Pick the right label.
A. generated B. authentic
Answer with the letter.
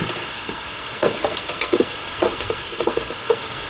A